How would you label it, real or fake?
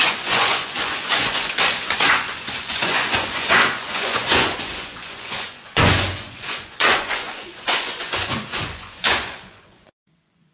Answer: fake